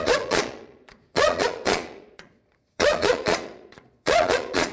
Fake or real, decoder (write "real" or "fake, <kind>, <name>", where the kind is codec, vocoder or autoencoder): fake, vocoder, Vocos